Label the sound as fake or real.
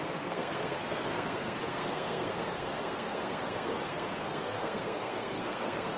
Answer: fake